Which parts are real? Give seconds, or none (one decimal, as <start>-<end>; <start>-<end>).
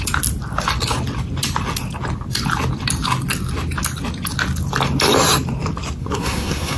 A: 0.0-6.0